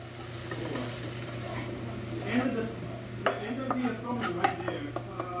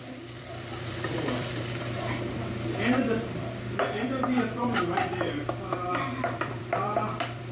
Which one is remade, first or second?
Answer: second